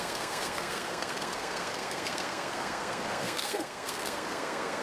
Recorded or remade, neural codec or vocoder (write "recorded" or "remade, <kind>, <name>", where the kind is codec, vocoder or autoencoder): remade, codec, SNAC